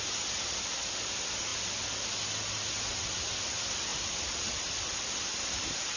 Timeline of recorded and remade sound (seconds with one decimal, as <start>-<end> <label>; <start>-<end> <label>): 0.0-3.9 recorded; 3.9-4.5 remade; 4.5-6.0 recorded